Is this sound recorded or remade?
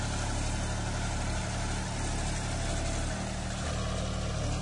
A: recorded